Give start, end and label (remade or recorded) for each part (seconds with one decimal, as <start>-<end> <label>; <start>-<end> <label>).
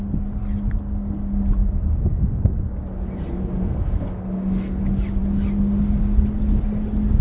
0.0-2.0 recorded; 2.0-2.6 remade; 2.6-3.6 recorded; 3.6-4.8 remade; 4.8-7.2 recorded